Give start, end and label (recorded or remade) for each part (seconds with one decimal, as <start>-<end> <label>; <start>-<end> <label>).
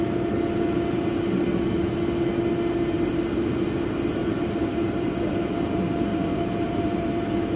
0.0-4.2 recorded; 4.2-4.7 remade; 4.7-6.1 recorded; 6.1-7.1 remade; 7.1-7.6 recorded